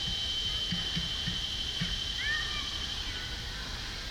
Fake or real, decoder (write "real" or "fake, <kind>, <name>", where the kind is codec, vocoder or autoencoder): fake, vocoder, BigVGAN v2